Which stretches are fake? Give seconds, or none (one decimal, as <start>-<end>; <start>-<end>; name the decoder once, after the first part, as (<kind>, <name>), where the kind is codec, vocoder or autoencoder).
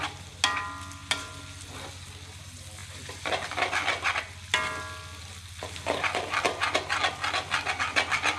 none